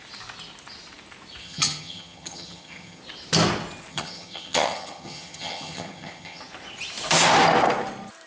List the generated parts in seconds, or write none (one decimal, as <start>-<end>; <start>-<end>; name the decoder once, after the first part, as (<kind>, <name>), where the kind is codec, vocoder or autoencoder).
1.4-3.0 (vocoder, HiFi-GAN); 3.9-6.4